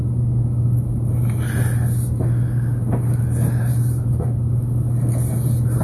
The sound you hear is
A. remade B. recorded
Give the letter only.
B